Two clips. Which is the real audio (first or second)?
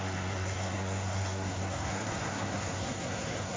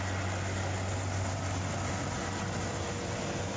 second